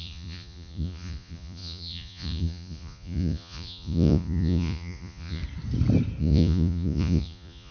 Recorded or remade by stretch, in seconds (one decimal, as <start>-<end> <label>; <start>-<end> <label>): 0.0-5.4 remade; 5.4-6.2 recorded; 6.2-7.7 remade